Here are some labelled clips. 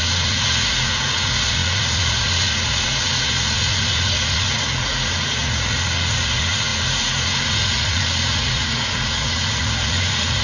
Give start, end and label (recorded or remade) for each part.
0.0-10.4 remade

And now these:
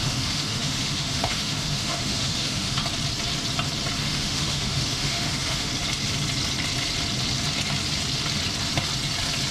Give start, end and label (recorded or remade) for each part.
0.0-2.8 remade; 2.8-4.0 recorded; 4.0-5.7 remade; 5.7-9.5 recorded

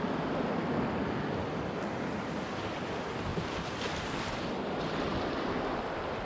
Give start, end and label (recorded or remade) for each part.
0.0-3.3 recorded; 3.3-6.3 remade

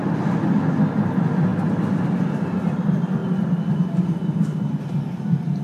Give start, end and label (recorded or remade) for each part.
0.0-5.6 recorded

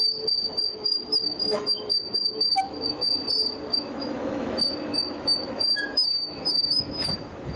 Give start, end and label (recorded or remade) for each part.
0.0-0.7 recorded; 0.7-3.1 remade; 3.1-3.7 recorded; 3.7-4.5 remade; 4.5-4.9 recorded; 4.9-7.1 remade; 7.1-7.6 recorded

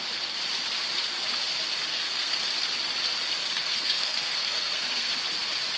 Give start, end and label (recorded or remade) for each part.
0.0-1.9 recorded; 1.9-2.4 remade; 2.4-3.4 recorded; 3.4-5.1 remade; 5.1-5.8 recorded

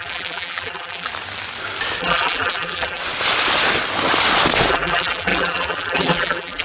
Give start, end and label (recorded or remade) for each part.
0.0-1.1 remade; 1.1-2.0 recorded; 2.0-3.0 remade; 3.0-4.7 recorded; 4.7-6.6 remade